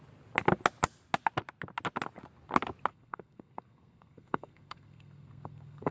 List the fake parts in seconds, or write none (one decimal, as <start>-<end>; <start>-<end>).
2.9-5.9